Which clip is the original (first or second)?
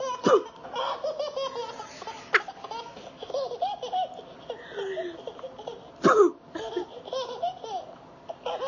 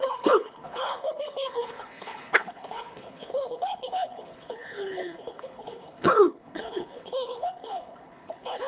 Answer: first